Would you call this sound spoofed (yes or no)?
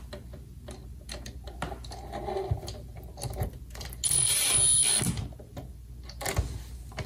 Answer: no